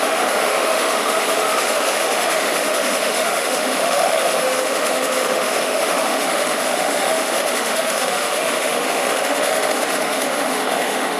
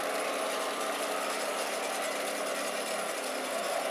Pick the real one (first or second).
second